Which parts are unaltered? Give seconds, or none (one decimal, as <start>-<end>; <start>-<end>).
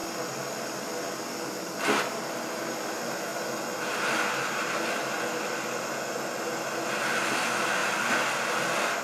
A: 0.0-9.0